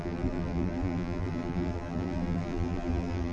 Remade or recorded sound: remade